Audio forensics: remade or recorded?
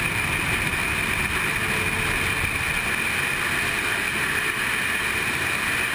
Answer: recorded